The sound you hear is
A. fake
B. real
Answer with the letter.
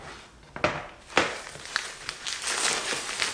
B